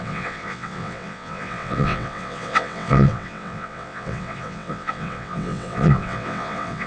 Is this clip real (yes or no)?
no